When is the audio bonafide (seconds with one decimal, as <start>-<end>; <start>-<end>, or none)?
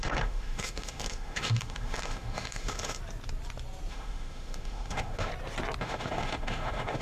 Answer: 3.0-3.9; 5.3-5.8